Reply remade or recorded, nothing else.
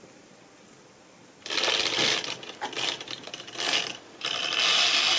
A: recorded